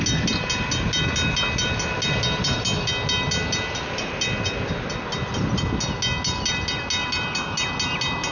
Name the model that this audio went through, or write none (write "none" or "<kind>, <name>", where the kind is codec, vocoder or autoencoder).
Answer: none